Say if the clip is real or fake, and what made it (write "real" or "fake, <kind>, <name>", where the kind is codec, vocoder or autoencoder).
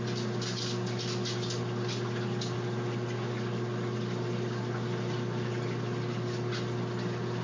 real